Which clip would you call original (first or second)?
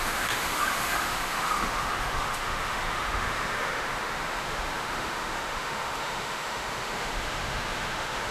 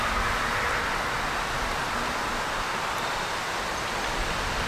second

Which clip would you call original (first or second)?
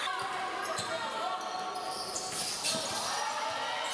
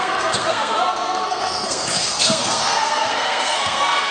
first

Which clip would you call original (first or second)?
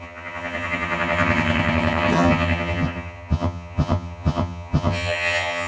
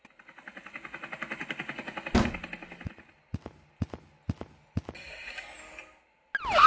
second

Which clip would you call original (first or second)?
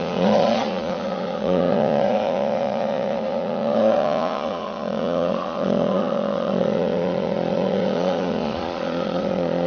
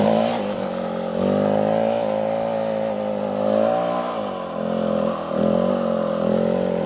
second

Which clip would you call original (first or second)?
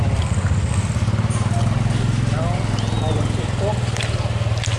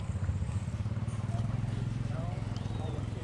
first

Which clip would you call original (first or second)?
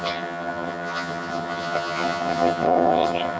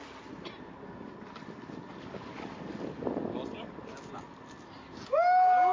second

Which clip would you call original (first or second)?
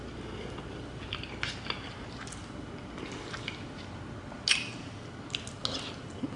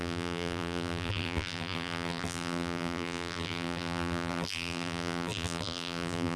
first